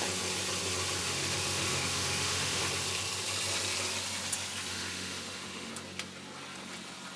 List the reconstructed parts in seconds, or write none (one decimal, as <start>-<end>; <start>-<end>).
1.0-2.6; 4.7-5.7